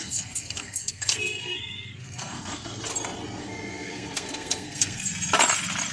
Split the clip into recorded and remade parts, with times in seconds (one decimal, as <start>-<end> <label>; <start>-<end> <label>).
0.0-2.8 remade; 2.8-3.4 recorded; 3.4-5.1 remade; 5.1-5.9 recorded